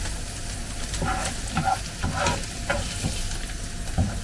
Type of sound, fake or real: real